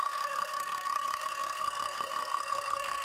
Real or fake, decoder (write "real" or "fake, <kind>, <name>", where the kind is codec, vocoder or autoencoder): fake, codec, SNAC